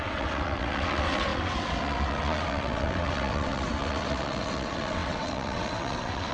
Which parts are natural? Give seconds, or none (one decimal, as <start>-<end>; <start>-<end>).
none